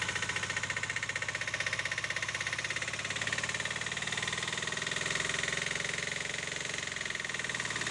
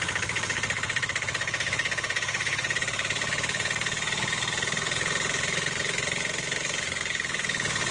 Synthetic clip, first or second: second